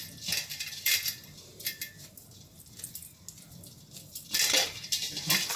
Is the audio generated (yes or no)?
no